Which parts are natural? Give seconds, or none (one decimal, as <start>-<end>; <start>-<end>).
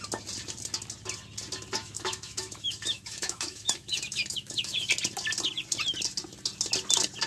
0.0-1.8; 4.9-7.3